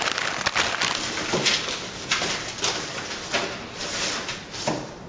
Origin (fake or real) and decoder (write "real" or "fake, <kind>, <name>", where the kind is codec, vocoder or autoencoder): real